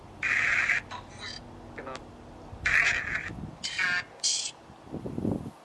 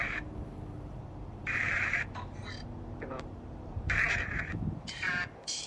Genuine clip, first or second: first